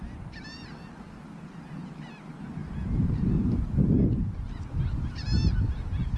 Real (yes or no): yes